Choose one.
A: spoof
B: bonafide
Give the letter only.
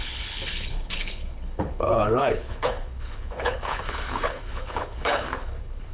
A